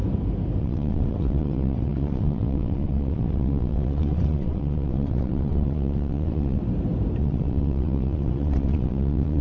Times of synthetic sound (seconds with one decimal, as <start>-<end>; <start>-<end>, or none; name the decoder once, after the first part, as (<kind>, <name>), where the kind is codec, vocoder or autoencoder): 0.6-6.6 (vocoder, WaveNeXt); 7.2-9.4